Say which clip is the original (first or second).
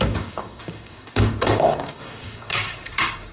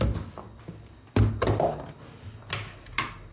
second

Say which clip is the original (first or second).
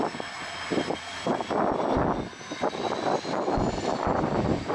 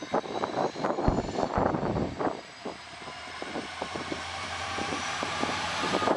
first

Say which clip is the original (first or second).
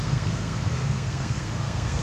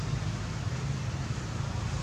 second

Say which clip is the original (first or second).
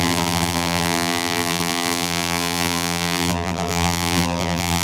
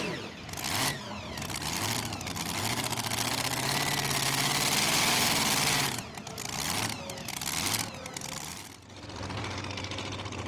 second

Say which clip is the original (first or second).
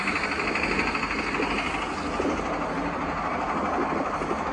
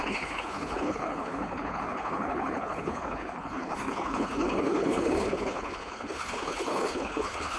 first